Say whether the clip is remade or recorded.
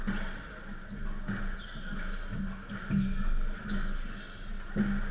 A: recorded